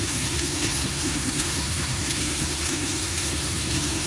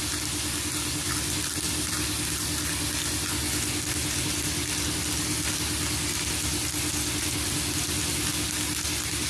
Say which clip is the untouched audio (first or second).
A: second